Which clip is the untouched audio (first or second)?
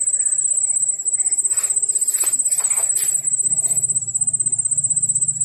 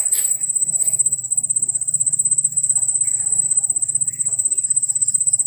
first